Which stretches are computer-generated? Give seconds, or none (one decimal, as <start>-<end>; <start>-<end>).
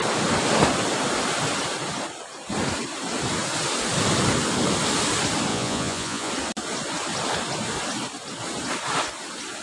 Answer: 5.5-6.3